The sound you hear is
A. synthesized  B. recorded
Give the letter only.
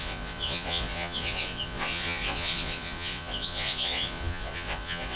A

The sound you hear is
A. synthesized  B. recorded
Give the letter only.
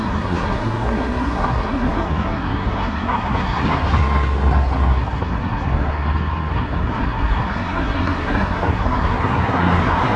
A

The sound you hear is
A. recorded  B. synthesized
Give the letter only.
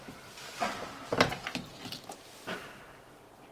A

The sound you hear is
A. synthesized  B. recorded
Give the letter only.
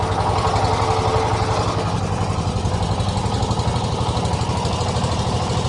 B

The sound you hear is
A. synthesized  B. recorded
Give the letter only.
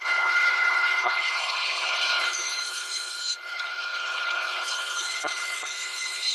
A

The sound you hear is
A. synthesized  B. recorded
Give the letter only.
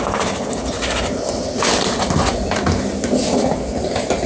B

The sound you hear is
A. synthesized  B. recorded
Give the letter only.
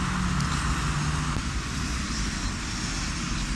B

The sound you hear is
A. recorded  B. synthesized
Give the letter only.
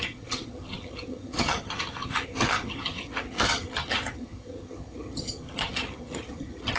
B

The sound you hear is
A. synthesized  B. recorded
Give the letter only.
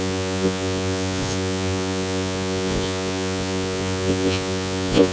A